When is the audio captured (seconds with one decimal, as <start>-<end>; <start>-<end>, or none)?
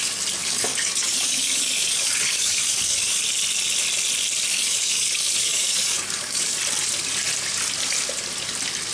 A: 0.0-0.4; 3.2-4.5; 6.6-8.9